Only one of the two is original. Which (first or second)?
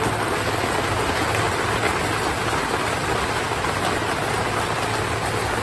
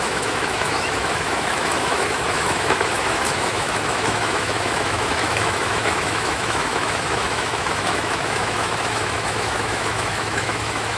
first